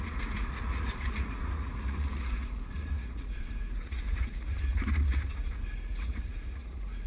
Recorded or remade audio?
remade